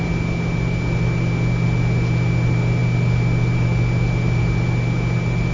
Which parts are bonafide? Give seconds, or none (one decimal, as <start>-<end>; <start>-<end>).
0.0-5.5